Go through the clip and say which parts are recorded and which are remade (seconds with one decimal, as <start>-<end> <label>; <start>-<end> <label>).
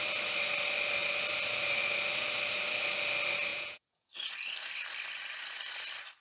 0.0-3.5 recorded; 3.5-4.1 remade; 4.1-6.2 recorded